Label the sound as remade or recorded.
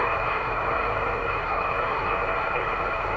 remade